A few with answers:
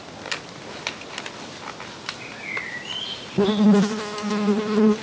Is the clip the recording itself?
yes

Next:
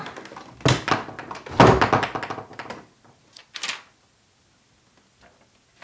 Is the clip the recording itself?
yes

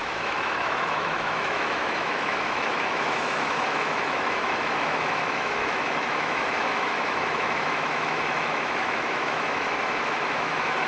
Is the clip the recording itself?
no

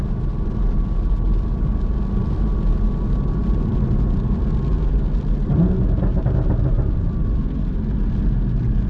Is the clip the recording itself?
yes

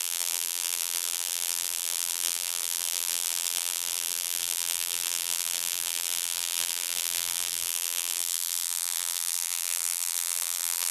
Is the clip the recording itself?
no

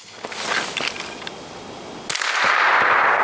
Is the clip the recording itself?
yes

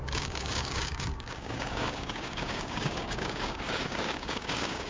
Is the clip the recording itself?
no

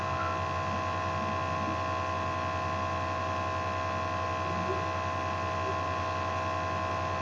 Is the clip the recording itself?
yes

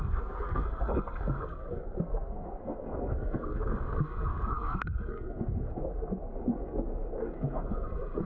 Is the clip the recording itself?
no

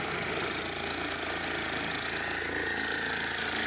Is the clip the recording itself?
yes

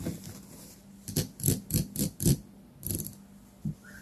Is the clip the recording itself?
yes